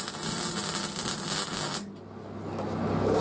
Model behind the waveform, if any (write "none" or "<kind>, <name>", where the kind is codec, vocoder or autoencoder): none